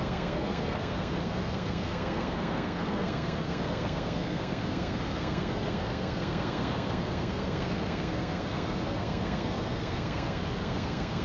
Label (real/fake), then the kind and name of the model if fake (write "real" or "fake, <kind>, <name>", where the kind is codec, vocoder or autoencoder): fake, codec, SNAC